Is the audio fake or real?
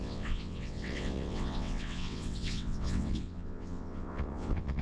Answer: fake